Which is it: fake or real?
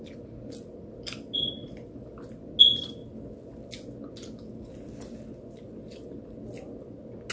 real